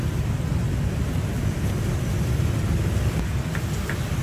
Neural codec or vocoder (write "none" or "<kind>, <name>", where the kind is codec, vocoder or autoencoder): none